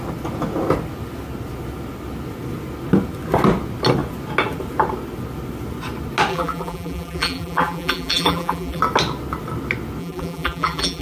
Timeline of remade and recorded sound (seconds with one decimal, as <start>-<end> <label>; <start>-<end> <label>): 0.0-6.3 recorded; 6.3-8.8 remade; 8.8-10.0 recorded; 10.0-11.0 remade